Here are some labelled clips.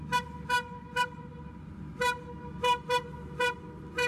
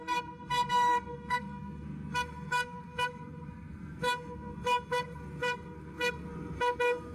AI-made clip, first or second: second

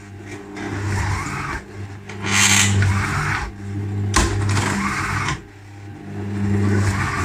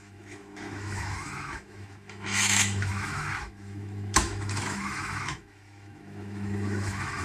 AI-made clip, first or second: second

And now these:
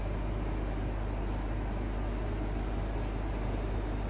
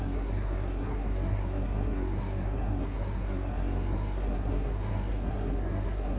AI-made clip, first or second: second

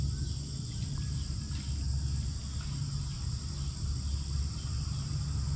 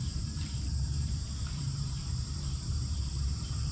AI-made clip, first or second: second